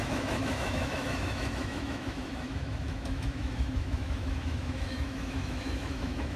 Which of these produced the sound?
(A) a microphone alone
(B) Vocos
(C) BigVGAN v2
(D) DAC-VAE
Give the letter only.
D